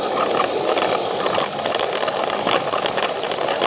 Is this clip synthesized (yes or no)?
no